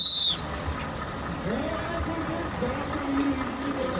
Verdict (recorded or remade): recorded